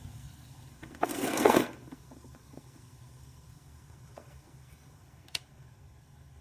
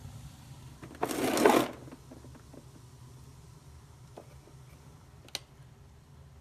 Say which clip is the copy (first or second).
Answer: first